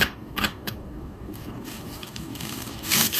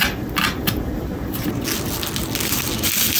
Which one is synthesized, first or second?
first